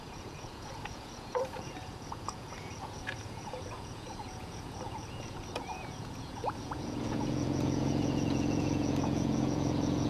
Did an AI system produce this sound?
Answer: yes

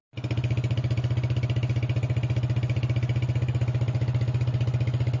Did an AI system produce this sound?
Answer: no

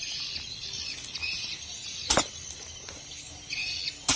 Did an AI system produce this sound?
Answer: no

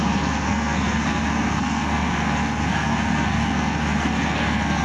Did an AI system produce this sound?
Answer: yes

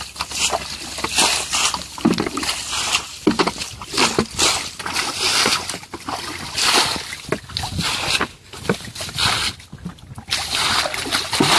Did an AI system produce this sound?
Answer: no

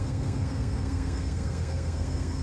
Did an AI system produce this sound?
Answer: yes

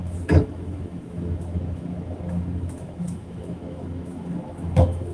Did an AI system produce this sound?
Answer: yes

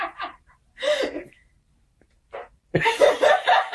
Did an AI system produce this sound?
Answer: yes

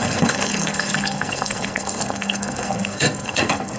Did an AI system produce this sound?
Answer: yes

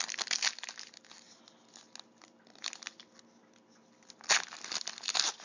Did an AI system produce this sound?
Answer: no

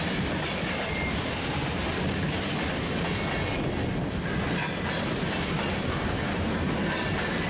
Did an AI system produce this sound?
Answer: no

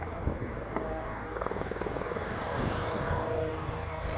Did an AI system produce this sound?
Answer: yes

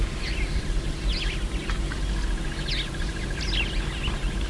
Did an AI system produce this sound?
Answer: no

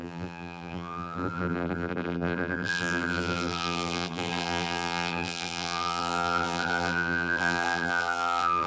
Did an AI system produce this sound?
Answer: yes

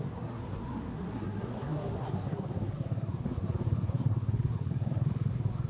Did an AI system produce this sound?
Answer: yes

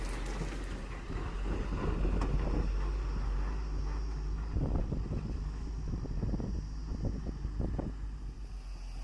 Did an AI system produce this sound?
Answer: no